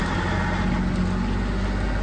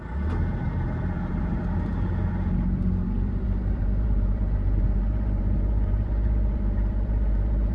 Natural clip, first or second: first